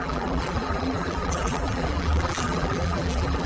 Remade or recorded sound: remade